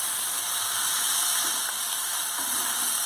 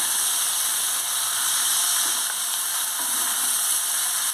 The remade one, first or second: first